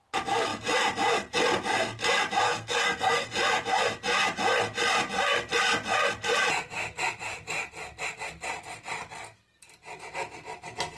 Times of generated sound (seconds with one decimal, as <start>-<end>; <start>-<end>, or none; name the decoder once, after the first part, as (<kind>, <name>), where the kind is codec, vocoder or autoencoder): 2.4-3.3 (codec, SNAC)